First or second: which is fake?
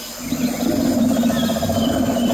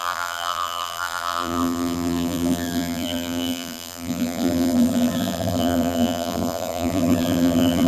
second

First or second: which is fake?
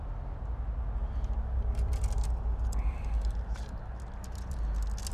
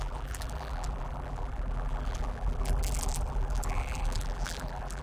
second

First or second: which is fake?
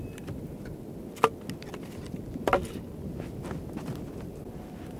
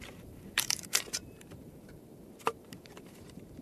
second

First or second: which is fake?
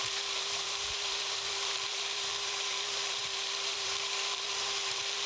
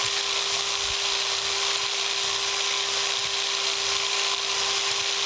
first